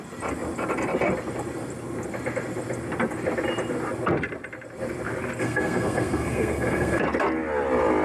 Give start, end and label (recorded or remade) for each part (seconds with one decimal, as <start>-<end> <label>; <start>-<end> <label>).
0.0-5.4 recorded; 5.4-7.0 remade; 7.0-8.0 recorded